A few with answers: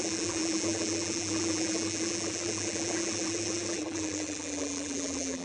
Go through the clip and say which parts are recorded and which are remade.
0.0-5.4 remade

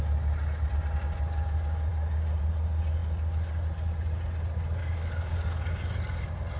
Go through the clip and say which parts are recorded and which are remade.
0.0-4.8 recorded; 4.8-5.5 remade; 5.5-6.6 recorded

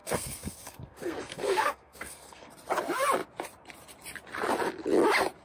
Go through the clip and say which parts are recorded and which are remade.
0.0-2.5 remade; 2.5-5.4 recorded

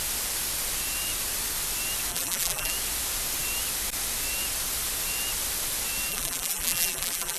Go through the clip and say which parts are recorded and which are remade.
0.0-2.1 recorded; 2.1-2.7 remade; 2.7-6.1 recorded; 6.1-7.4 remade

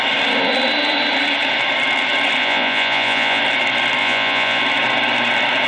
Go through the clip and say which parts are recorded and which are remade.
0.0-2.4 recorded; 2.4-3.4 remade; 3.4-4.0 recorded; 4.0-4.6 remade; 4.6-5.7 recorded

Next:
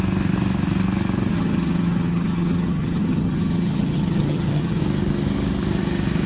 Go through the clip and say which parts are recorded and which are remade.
0.0-1.3 recorded; 1.3-4.8 remade; 4.8-6.3 recorded

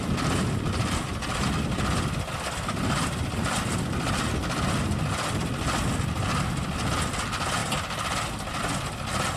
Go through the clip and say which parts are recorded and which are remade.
0.0-9.4 recorded